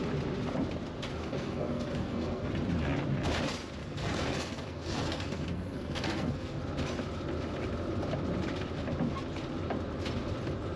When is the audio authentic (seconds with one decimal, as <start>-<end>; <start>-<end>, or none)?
0.0-1.1; 2.5-3.8; 6.6-10.8